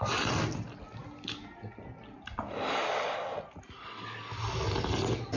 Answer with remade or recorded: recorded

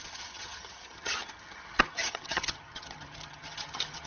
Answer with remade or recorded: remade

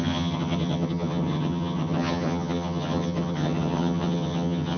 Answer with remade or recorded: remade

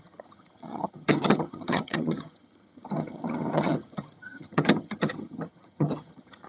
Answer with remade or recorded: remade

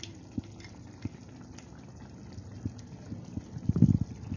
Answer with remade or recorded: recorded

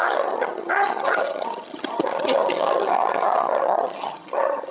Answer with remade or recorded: remade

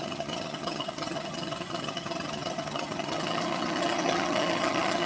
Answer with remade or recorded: remade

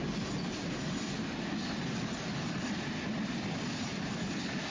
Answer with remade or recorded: recorded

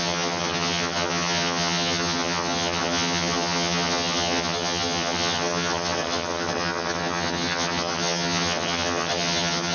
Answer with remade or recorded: remade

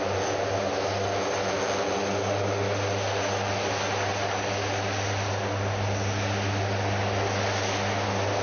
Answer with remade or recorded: recorded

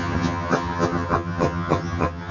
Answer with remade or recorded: remade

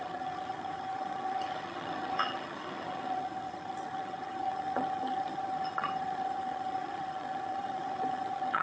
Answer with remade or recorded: remade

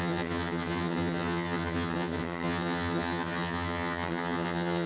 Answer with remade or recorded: remade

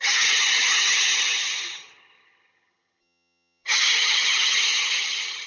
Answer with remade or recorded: remade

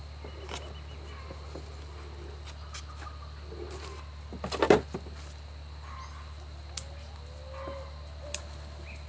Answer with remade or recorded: recorded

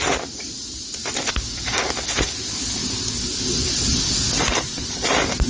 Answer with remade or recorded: recorded